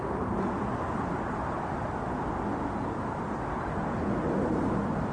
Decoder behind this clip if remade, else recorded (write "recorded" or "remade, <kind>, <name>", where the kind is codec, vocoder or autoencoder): recorded